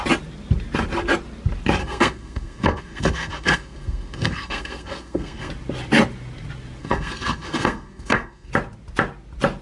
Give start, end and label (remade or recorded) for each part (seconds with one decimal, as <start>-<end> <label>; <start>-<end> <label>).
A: 0.0-1.8 recorded; 1.8-5.5 remade; 5.5-6.8 recorded; 6.8-8.5 remade; 8.5-9.6 recorded